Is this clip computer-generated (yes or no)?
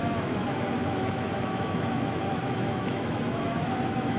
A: yes